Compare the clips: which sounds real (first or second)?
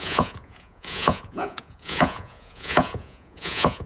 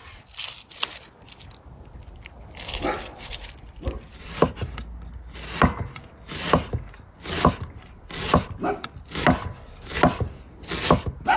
second